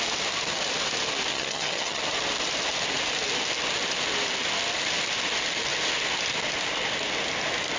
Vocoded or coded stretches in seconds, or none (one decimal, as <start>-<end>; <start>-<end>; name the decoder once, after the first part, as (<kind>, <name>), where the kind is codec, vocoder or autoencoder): 1.3-2.0 (vocoder, HiFi-GAN)